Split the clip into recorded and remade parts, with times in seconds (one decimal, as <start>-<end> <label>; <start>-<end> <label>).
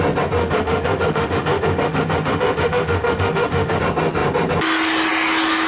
0.0-0.4 recorded; 0.4-3.8 remade; 3.8-5.7 recorded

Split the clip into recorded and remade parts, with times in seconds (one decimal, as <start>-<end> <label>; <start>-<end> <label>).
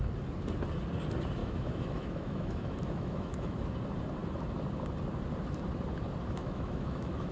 0.0-1.4 recorded; 1.4-3.6 remade; 3.6-6.4 recorded; 6.4-7.3 remade